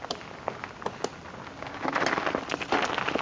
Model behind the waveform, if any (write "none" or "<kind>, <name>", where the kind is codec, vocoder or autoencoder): none